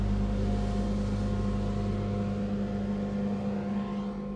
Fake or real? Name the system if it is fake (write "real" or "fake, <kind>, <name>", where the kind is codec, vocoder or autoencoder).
real